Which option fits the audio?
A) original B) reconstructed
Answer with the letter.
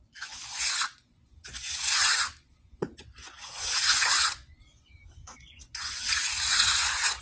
B